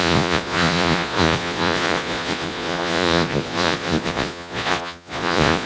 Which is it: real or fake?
fake